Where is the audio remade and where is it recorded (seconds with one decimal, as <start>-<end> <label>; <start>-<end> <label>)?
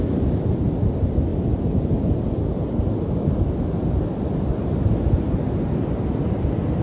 0.0-6.8 recorded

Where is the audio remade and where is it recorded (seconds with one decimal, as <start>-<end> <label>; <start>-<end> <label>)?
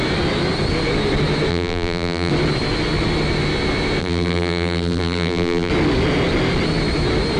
0.0-1.5 recorded; 1.5-2.3 remade; 2.3-4.0 recorded; 4.0-5.7 remade; 5.7-7.4 recorded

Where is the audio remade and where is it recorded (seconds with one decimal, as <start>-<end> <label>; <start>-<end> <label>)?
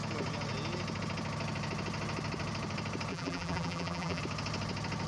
0.0-3.1 recorded; 3.1-4.2 remade; 4.2-5.1 recorded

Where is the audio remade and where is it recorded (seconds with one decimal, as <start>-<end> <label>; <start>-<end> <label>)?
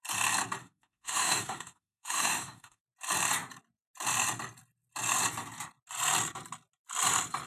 0.0-0.6 recorded; 0.6-2.8 remade; 2.8-7.5 recorded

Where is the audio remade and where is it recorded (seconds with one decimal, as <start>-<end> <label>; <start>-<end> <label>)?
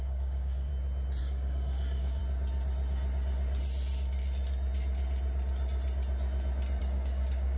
0.0-0.7 remade; 0.7-1.2 recorded; 1.2-2.2 remade; 2.2-6.8 recorded; 6.8-7.6 remade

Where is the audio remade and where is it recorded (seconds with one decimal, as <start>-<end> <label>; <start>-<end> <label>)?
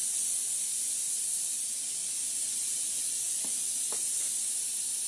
0.0-1.6 remade; 1.6-2.0 recorded; 2.0-5.1 remade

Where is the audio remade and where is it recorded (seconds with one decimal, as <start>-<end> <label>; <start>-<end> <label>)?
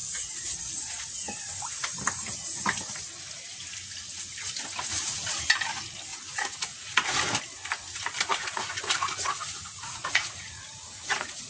0.0-0.6 remade; 0.6-4.9 recorded; 4.9-5.5 remade; 5.5-6.1 recorded; 6.1-7.2 remade; 7.2-8.4 recorded; 8.4-11.5 remade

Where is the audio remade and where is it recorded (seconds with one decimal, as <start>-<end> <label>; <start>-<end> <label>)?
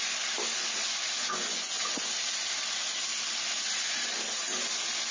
0.0-1.3 recorded; 1.3-2.1 remade; 2.1-5.1 recorded